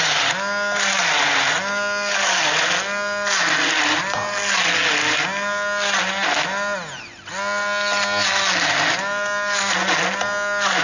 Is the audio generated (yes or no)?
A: no